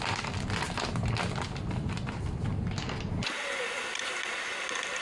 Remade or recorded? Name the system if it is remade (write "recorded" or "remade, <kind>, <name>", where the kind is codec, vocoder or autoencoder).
recorded